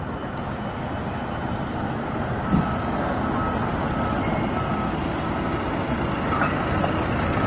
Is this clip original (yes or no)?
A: yes